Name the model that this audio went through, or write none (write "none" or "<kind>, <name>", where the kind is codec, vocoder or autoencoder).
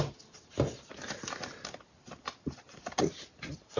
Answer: none